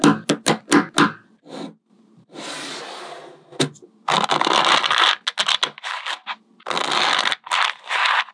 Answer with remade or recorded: recorded